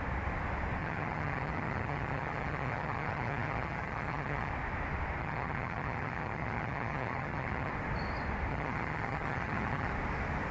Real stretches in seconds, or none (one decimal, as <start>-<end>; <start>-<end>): 0.0-0.8; 4.5-5.2; 7.7-8.5; 9.9-10.5